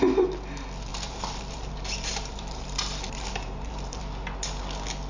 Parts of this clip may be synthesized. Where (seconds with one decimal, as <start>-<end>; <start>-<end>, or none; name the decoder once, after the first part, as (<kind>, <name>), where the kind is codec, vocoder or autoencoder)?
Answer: 0.9-4.0 (vocoder, BigVGAN v2)